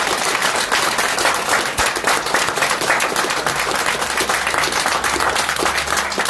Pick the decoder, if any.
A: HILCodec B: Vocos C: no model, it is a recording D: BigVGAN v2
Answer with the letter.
C